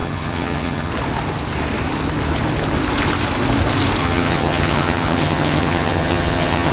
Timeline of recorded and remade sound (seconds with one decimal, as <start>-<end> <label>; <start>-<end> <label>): 0.0-0.9 remade; 0.9-4.0 recorded; 4.0-6.7 remade